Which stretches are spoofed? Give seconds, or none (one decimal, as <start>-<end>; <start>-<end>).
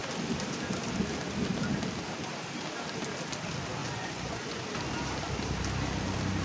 3.8-4.6